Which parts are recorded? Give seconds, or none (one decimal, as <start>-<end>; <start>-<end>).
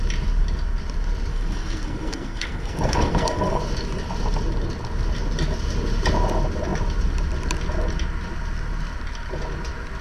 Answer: 0.0-1.3; 3.6-10.0